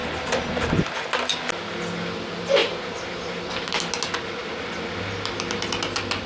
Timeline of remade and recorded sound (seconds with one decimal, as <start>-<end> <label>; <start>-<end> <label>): 0.0-0.7 remade; 0.7-2.6 recorded; 2.6-3.5 remade; 3.5-6.3 recorded